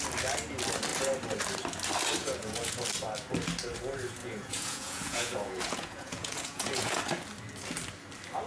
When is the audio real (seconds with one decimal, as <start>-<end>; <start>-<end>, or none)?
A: 0.0-2.2; 2.8-4.2; 7.0-8.5